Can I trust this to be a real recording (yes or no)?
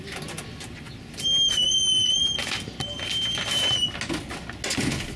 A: yes